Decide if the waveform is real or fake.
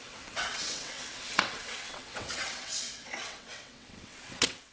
fake